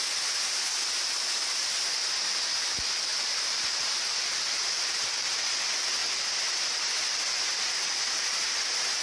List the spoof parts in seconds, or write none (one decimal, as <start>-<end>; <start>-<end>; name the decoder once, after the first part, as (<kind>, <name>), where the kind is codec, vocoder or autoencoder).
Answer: none